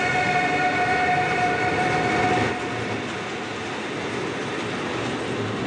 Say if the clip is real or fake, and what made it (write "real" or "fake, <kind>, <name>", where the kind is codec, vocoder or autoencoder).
real